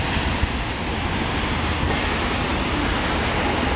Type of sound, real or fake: real